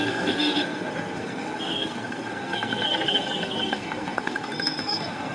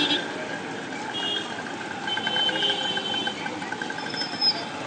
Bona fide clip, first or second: second